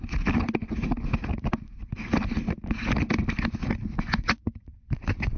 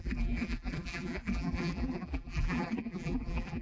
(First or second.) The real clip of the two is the first